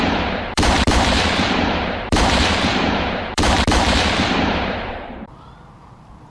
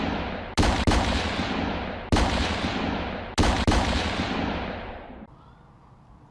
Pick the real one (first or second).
second